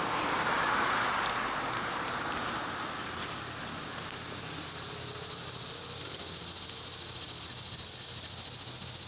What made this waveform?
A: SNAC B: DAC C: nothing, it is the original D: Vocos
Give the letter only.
C